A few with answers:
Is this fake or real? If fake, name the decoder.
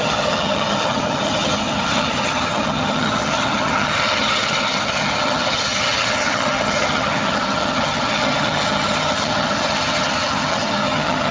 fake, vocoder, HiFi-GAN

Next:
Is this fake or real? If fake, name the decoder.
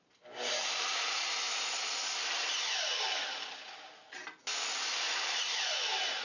real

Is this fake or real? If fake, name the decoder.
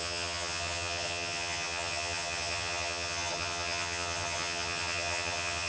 fake, vocoder, HiFi-GAN